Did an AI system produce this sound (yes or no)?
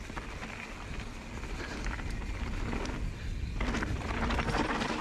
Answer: no